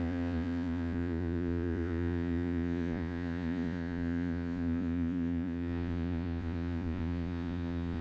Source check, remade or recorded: remade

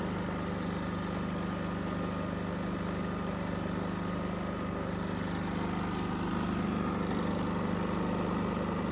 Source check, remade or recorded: recorded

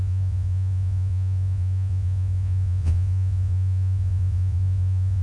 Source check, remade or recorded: remade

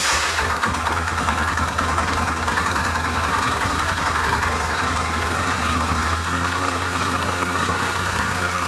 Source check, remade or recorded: remade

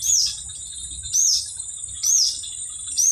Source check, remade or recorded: recorded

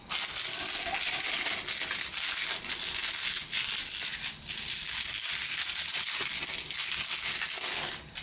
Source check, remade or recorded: recorded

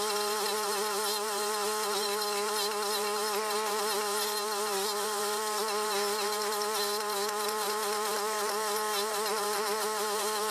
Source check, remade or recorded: remade